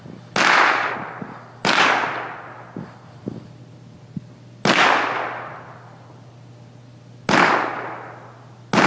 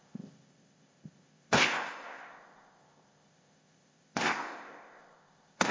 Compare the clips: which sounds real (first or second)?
first